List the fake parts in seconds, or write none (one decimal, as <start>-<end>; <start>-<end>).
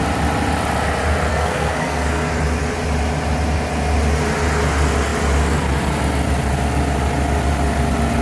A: 1.3-2.3